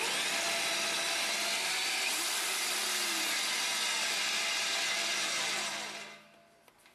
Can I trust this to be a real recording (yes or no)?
yes